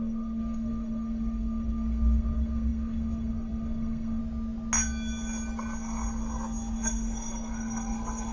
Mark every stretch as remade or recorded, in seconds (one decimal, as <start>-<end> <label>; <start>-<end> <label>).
0.0-4.2 remade; 4.2-6.7 recorded; 6.7-8.3 remade